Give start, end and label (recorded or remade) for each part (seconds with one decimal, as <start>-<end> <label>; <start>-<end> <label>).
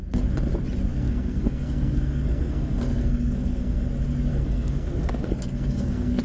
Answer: 0.0-0.9 recorded; 0.9-3.9 remade; 3.9-4.3 recorded; 4.3-6.2 remade